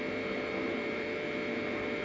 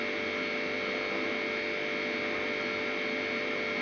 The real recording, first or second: second